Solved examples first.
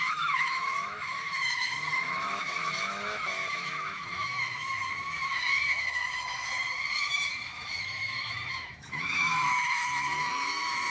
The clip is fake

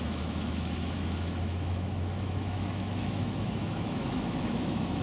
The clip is fake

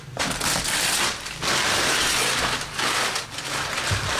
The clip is real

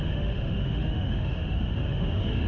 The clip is fake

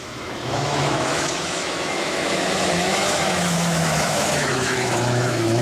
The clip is fake